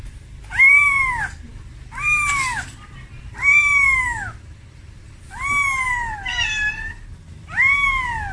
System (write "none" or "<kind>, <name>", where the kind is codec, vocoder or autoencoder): none